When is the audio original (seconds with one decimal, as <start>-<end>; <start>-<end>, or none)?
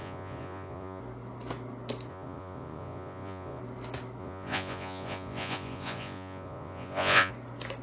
1.0-2.1; 3.6-4.2; 7.3-7.8